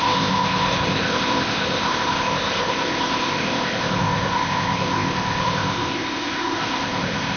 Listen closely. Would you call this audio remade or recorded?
remade